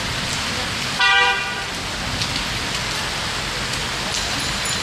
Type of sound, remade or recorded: recorded